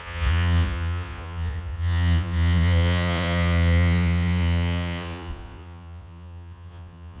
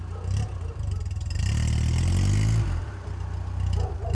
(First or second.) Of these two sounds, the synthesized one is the first